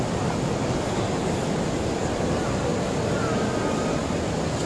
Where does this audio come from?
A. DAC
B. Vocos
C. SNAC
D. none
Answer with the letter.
D